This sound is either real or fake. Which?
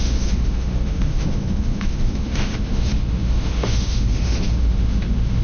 fake